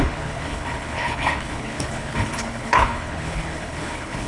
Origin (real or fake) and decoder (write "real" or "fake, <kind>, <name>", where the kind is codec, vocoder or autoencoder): fake, codec, HILCodec